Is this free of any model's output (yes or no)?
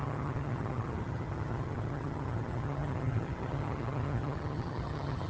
no